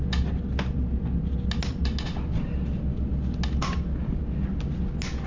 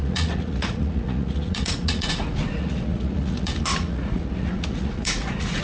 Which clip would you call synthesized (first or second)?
second